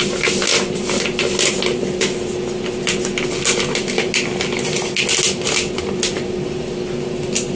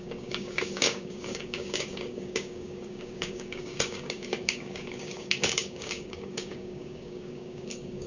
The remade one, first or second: second